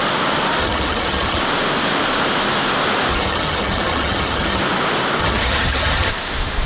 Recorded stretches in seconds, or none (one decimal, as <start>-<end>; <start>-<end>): 0.0-0.6; 1.4-3.1; 4.6-5.2; 6.1-6.7